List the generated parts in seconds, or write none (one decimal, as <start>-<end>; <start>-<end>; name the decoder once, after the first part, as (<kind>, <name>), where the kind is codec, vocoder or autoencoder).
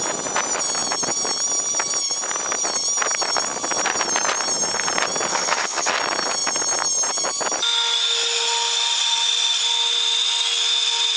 5.3-5.9 (vocoder, HiFi-GAN)